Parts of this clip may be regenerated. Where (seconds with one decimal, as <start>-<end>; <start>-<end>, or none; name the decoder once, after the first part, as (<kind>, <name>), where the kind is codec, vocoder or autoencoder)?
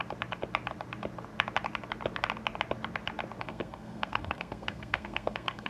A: 3.4-5.7 (codec, SNAC)